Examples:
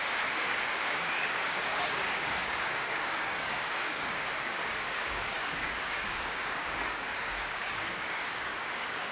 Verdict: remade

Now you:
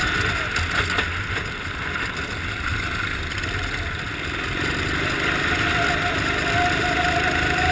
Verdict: recorded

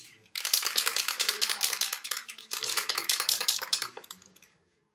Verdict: remade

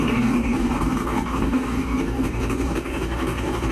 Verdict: remade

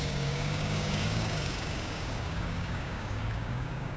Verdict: remade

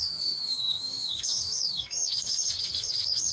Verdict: remade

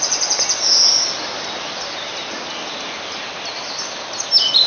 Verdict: recorded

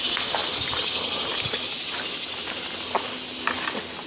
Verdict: recorded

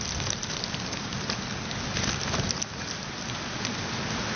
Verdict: recorded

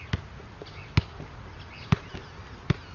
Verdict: recorded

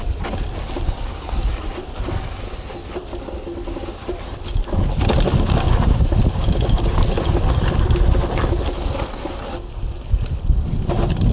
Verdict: recorded